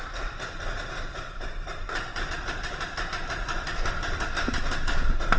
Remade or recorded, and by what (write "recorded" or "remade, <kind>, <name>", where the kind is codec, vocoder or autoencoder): recorded